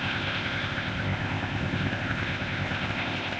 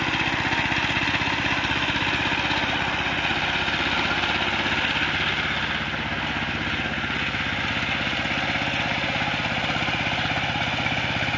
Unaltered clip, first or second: second